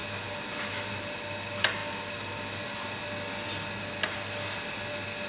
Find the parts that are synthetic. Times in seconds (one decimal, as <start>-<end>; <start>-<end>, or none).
none